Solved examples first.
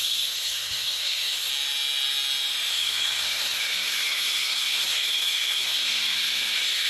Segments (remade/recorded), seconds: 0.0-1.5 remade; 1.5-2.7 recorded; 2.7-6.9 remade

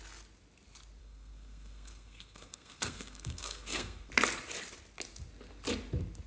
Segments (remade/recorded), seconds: 0.0-1.0 recorded; 1.0-4.1 remade; 4.1-6.3 recorded

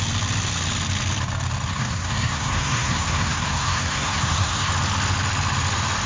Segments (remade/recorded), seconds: 0.0-1.7 recorded; 1.7-4.7 remade; 4.7-6.1 recorded